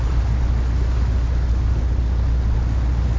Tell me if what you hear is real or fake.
real